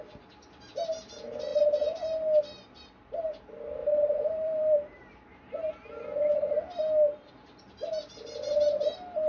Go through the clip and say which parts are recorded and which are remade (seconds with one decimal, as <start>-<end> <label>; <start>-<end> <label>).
0.0-3.8 recorded; 3.8-5.7 remade; 5.7-9.3 recorded